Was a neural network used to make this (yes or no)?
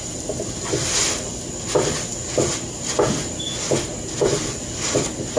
no